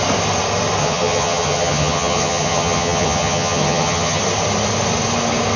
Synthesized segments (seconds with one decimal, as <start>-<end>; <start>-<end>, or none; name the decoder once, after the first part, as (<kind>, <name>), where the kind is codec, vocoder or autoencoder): 0.8-4.2 (vocoder, HiFi-GAN)